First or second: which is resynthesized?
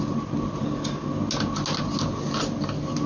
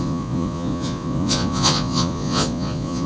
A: second